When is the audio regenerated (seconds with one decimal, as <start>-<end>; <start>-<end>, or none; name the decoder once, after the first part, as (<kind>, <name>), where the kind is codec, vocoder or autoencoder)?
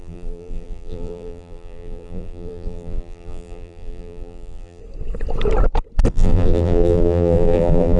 0.0-4.8 (vocoder, BigVGAN v2); 6.1-8.0